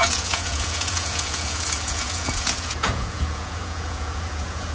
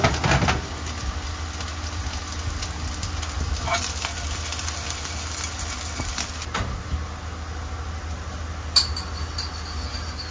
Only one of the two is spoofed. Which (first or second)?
first